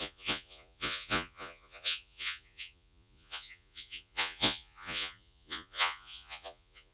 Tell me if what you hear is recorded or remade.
remade